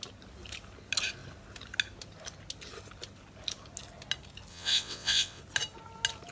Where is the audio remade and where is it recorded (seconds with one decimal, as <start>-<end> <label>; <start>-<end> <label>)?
0.0-4.5 recorded; 4.5-5.4 remade; 5.4-6.3 recorded